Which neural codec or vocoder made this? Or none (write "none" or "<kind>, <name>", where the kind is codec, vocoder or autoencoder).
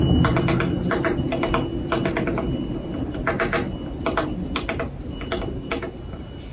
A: none